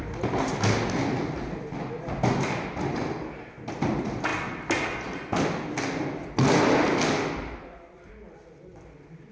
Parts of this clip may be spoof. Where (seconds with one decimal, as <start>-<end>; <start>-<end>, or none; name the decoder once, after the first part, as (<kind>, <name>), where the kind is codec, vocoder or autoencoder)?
none